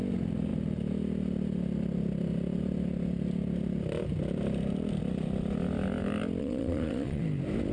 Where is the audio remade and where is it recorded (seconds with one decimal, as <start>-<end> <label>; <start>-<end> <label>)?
0.0-6.4 recorded; 6.4-7.2 remade; 7.2-7.7 recorded